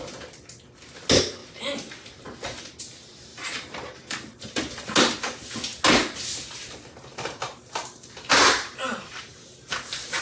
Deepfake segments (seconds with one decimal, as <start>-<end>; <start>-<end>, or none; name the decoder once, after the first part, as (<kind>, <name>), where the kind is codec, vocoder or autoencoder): 3.3-4.8 (vocoder, BigVGAN v2); 7.1-9.3